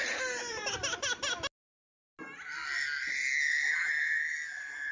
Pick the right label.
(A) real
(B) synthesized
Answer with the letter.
A